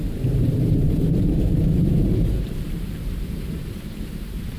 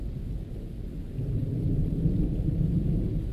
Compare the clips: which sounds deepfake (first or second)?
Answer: first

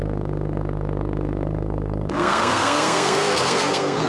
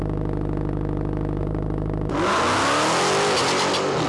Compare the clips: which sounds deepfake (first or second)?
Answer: first